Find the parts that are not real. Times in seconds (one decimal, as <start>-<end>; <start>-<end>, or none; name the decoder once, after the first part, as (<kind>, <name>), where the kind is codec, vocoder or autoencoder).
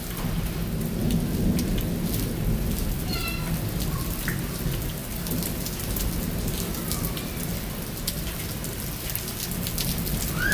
none